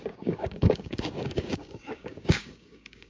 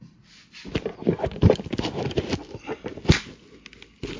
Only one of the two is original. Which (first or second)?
second